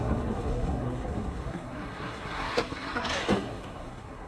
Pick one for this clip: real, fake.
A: fake